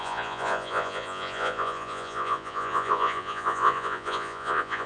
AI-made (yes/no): yes